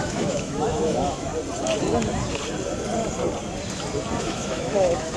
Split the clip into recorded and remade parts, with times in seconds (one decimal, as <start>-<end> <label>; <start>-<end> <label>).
0.0-1.3 remade; 1.3-4.2 recorded; 4.2-5.2 remade